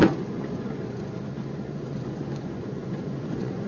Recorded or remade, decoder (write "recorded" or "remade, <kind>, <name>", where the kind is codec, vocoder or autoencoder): remade, vocoder, Vocos